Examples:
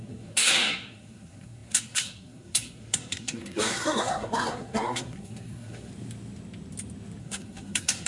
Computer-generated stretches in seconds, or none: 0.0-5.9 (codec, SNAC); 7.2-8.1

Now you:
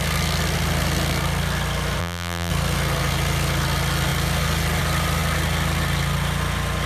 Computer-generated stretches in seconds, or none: 2.0-2.5 (vocoder, BigVGAN v2)